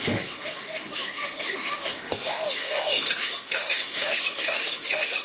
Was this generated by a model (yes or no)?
yes